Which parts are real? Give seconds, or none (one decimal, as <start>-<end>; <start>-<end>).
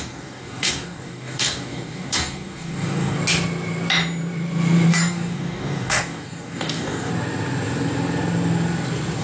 3.2-4.9; 7.1-9.2